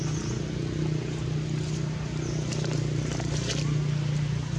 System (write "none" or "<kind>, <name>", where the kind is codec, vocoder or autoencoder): none